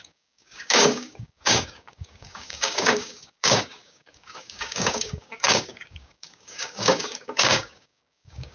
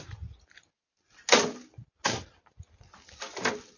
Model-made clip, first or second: first